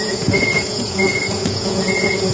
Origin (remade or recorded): remade